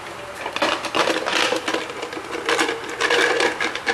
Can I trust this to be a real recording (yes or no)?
yes